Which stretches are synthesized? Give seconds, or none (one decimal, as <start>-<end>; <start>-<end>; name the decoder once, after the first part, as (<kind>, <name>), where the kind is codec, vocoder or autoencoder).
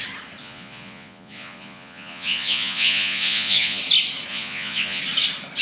0.4-3.8 (vocoder, Vocos); 4.3-5.0